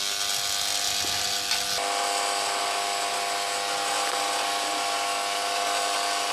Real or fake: real